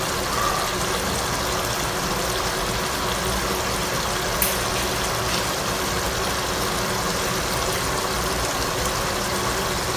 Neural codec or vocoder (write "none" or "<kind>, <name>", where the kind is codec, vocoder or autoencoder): none